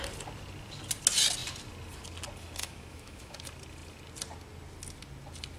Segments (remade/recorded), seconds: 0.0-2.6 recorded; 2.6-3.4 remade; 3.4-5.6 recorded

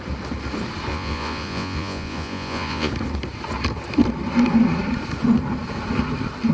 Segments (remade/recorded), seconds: 0.0-0.9 recorded; 0.9-2.9 remade; 2.9-6.5 recorded

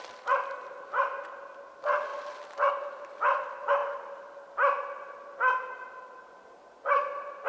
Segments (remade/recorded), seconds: 0.0-7.5 recorded

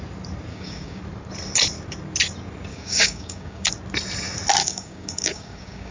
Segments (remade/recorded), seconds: 0.0-0.5 recorded; 0.5-1.0 remade; 1.0-2.7 recorded; 2.7-3.7 remade; 3.7-4.6 recorded; 4.6-5.9 remade

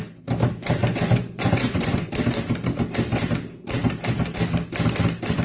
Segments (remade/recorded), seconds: 0.0-0.8 recorded; 0.8-2.1 remade; 2.1-5.4 recorded

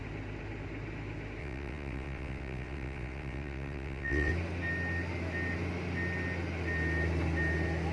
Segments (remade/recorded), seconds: 0.0-1.4 recorded; 1.4-4.3 remade; 4.3-7.9 recorded

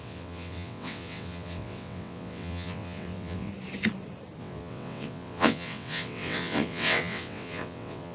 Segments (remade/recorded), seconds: 0.0-3.5 remade; 3.5-4.4 recorded; 4.4-8.1 remade